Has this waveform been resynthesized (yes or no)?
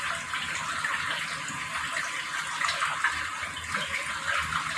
no